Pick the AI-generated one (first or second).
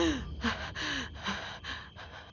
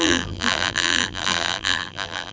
second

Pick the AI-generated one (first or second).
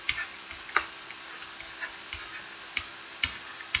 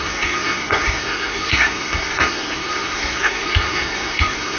second